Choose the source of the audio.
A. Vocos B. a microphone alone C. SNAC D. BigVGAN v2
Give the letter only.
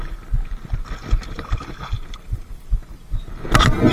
B